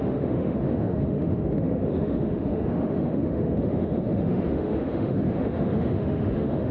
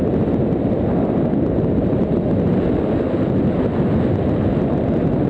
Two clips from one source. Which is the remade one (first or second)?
first